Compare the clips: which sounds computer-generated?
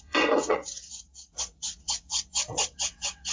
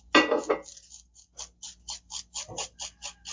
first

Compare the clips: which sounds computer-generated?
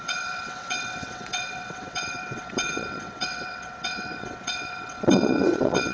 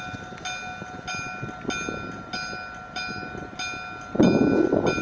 first